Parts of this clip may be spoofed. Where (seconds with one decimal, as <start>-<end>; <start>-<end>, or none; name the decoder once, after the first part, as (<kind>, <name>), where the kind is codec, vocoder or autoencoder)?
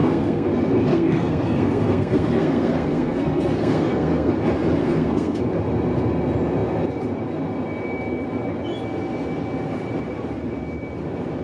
0.0-0.5 (codec, SNAC); 0.9-4.3; 4.8-5.4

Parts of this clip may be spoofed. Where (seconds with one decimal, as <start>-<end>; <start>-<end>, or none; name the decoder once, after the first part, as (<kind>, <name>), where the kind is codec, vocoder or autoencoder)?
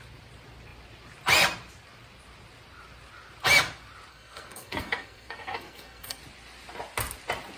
4.1-6.2 (codec, SNAC)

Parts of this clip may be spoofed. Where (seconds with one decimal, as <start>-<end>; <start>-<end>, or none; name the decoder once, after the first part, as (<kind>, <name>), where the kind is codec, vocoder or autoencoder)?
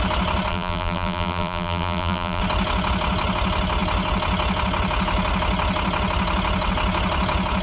0.5-2.4 (vocoder, BigVGAN v2)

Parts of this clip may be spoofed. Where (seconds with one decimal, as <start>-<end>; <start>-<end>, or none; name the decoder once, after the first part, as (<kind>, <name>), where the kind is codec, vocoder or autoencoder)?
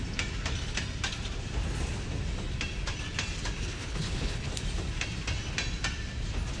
3.6-4.5 (codec, HILCodec)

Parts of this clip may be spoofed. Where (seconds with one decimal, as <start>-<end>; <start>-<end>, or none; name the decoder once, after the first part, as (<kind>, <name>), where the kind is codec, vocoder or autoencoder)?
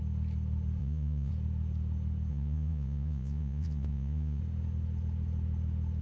0.8-1.3 (vocoder, Vocos); 2.3-4.4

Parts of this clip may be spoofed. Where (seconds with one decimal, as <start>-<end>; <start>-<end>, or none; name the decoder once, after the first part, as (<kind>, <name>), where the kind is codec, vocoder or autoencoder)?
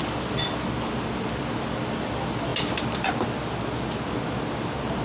none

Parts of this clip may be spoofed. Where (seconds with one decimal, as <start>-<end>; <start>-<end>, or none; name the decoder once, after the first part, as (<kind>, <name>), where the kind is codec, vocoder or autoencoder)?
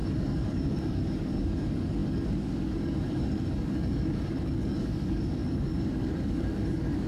0.0-7.1 (codec, DAC)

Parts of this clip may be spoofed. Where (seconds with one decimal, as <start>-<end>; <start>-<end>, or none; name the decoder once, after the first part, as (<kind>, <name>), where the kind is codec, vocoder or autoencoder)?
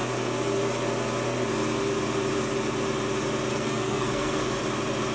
3.5-4.6 (codec, SNAC)